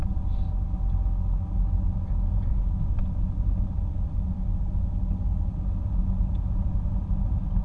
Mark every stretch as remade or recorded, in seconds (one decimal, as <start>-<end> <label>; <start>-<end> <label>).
0.0-1.9 recorded; 1.9-2.6 remade; 2.6-6.0 recorded; 6.0-6.6 remade; 6.6-7.6 recorded